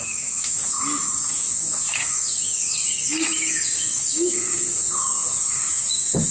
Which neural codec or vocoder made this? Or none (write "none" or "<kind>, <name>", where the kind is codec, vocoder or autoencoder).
autoencoder, DAC-VAE